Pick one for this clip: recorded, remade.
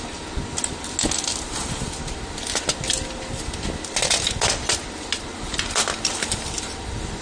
recorded